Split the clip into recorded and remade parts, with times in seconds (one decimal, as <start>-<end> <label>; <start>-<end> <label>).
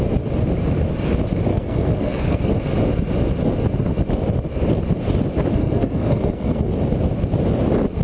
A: 0.0-1.5 recorded; 1.5-2.5 remade; 2.5-5.5 recorded; 5.5-6.7 remade; 6.7-8.0 recorded